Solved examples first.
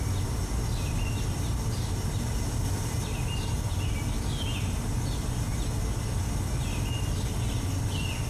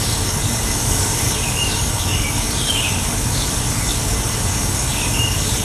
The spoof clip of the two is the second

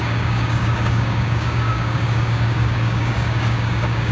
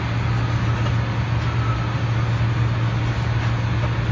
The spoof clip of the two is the first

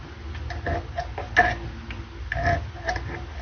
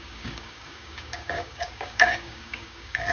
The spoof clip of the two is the second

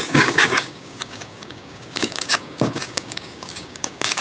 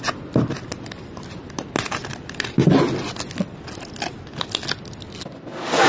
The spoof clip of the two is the first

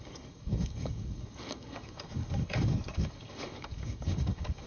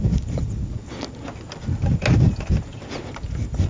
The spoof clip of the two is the first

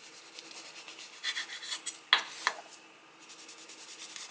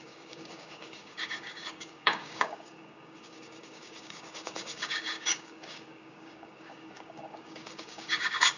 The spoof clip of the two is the second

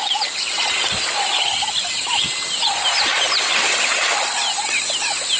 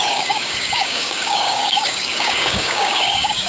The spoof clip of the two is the second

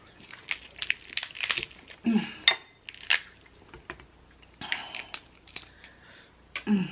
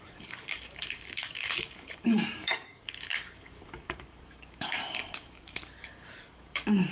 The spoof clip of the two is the second